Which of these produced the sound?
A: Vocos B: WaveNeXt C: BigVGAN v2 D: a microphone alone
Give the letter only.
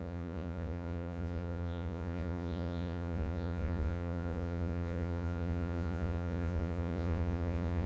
A